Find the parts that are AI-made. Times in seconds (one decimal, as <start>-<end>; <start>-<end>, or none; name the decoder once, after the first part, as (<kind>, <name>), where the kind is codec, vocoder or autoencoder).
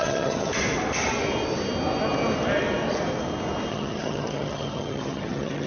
0.0-0.5 (vocoder, HiFi-GAN); 3.7-5.7